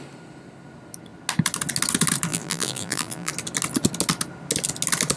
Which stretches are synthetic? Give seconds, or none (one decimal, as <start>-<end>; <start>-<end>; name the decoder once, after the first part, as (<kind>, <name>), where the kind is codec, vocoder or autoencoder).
2.3-3.3 (vocoder, BigVGAN v2)